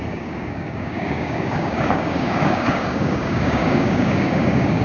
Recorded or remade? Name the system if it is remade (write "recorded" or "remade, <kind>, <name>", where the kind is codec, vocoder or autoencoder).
remade, codec, DAC